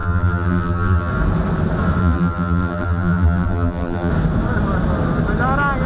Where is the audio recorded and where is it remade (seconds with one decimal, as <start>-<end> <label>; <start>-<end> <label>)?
0.0-1.1 remade; 1.1-2.0 recorded; 2.0-4.1 remade; 4.1-5.9 recorded